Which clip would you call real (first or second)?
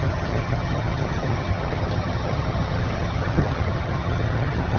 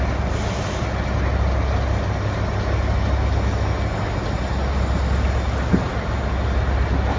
second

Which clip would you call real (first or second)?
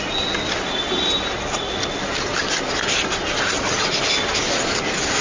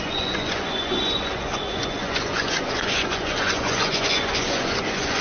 first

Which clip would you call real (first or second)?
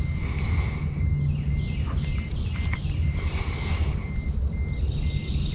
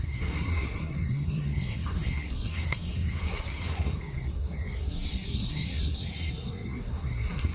first